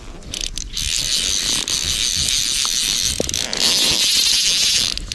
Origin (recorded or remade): recorded